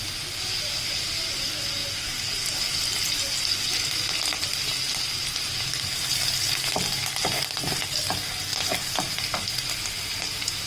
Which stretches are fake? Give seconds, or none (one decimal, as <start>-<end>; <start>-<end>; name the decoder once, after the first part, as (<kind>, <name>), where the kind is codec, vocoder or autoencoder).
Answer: none